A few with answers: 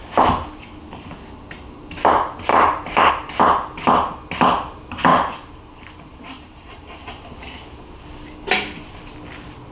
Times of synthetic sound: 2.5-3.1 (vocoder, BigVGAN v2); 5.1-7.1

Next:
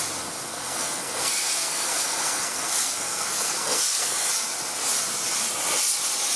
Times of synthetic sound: 0.5-4.3 (codec, SNAC)